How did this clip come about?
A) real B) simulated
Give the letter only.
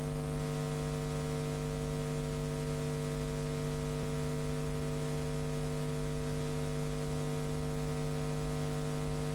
A